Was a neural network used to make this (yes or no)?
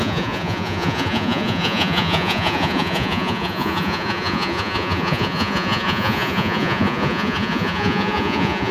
yes